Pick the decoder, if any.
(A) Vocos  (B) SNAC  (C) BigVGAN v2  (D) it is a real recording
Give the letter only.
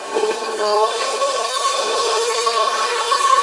B